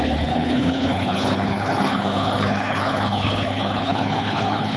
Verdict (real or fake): fake